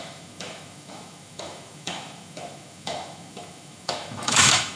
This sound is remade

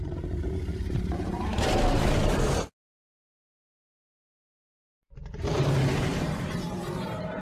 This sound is remade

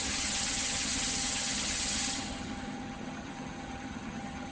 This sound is remade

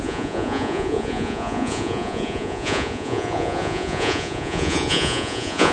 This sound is remade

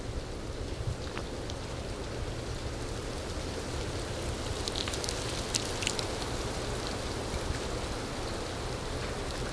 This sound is recorded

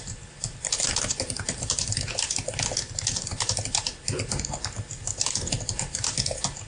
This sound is recorded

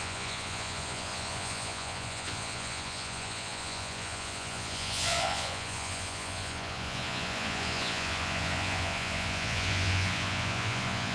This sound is remade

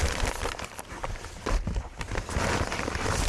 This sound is remade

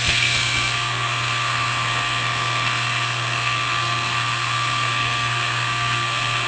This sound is remade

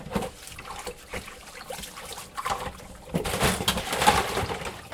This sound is recorded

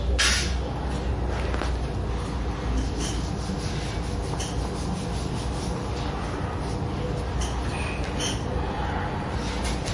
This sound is recorded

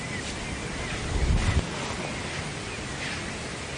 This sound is recorded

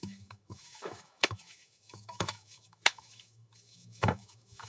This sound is remade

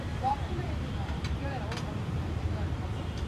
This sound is remade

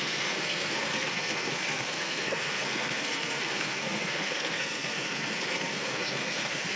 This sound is remade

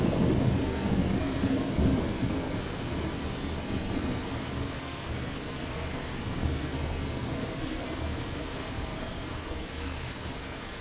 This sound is remade